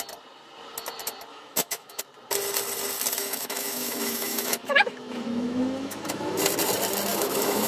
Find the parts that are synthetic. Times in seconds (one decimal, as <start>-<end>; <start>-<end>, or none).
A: 1.3-2.0; 3.2-6.4; 7.1-7.7